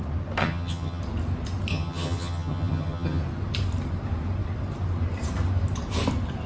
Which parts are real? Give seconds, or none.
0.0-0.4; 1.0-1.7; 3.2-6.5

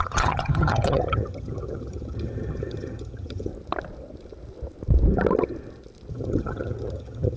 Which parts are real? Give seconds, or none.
3.5-6.1

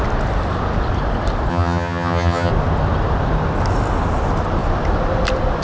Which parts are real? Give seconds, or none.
0.0-1.5; 2.5-5.6

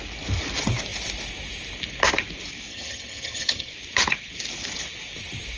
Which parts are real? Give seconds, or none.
0.0-2.7; 3.7-5.6

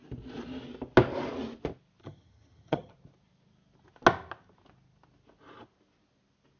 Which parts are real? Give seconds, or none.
0.0-2.0; 2.9-6.6

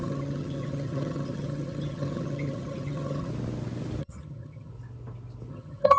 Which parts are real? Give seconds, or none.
3.3-4.0; 4.7-5.5

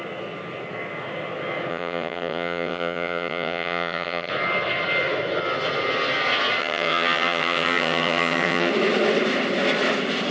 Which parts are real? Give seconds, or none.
0.0-1.7; 4.3-6.6; 8.7-10.3

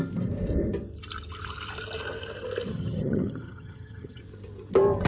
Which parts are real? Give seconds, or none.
0.0-2.7; 4.2-5.1